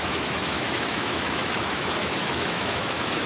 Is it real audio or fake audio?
fake